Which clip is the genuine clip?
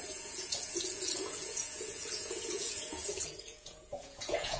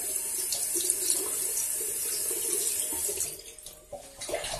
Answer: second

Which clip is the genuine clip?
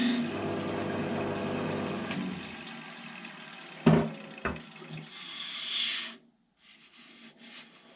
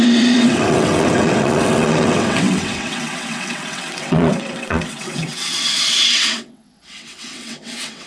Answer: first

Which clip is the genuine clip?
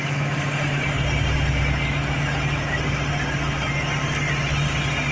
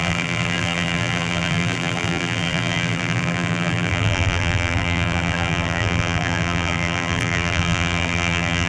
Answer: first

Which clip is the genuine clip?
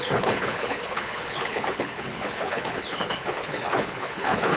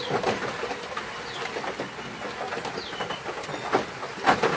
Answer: second